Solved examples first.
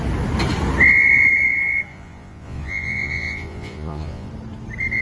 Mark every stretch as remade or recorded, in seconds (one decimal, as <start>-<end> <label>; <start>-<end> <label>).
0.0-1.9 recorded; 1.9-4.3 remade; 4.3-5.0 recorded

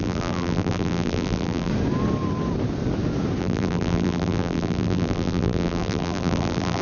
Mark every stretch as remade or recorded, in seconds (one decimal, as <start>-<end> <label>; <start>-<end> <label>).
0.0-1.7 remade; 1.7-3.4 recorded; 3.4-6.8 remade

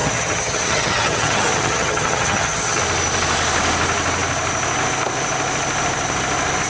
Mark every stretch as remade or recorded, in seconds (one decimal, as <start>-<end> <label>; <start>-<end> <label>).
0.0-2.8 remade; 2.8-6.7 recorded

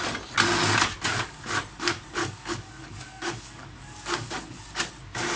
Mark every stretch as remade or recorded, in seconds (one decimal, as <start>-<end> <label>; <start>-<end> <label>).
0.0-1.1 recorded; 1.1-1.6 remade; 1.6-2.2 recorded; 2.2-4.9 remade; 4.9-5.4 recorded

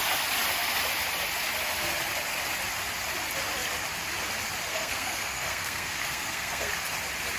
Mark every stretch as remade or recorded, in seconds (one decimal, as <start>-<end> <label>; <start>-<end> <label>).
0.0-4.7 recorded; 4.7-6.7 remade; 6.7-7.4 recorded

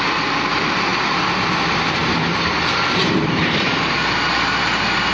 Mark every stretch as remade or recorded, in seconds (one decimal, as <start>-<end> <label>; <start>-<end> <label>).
0.0-5.1 remade

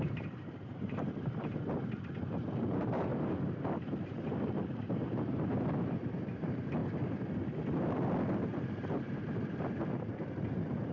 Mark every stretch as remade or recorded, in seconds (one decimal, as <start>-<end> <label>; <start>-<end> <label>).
0.0-6.8 remade; 6.8-8.6 recorded; 8.6-10.9 remade

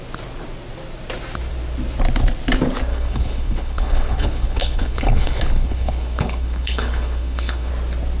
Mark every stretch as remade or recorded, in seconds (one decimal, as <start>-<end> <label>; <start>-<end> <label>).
0.0-2.9 recorded; 2.9-7.7 remade; 7.7-8.2 recorded